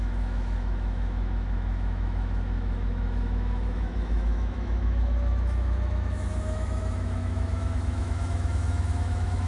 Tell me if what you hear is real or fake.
fake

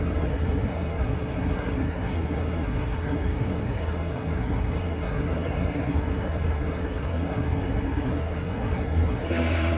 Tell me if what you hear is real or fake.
fake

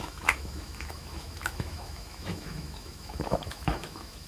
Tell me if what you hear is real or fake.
fake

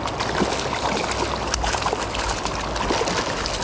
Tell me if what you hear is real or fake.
real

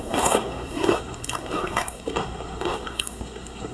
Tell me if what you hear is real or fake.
fake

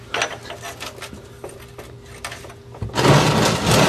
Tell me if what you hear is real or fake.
real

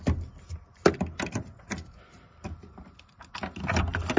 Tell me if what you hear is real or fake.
real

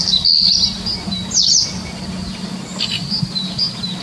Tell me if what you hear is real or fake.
real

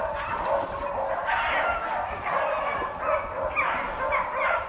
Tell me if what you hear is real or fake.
real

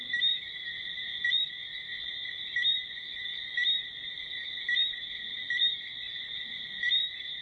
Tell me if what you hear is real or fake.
fake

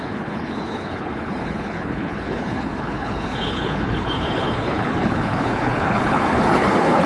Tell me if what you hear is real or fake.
fake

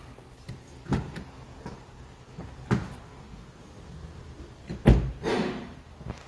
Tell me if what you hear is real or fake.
real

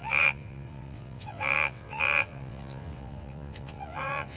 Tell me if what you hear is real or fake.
fake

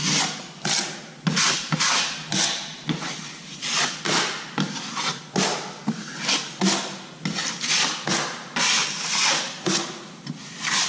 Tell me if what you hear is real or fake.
real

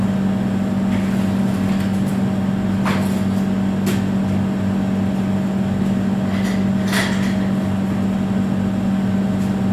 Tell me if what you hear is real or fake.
real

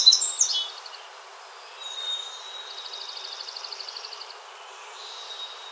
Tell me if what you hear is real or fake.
real